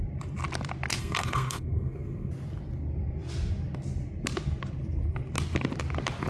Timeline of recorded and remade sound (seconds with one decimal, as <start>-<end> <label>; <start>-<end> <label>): 0.0-1.0 recorded; 1.0-2.3 remade; 2.3-6.3 recorded